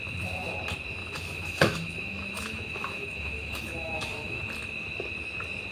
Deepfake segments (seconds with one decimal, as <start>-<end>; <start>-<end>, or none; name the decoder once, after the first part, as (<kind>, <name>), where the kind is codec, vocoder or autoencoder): 1.0-4.4 (autoencoder, DAC-VAE)